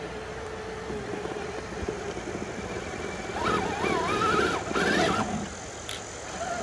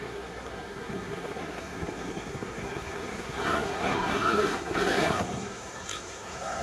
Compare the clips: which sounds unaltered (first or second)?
first